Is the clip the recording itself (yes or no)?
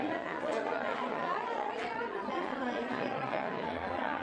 no